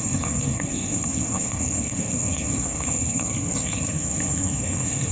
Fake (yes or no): yes